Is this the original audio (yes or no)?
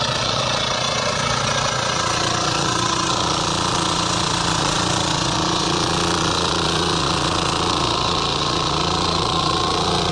no